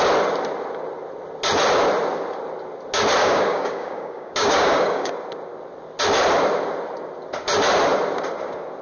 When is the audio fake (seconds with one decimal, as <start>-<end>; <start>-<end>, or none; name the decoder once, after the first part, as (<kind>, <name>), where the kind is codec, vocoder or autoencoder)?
3.2-5.1 (codec, DAC)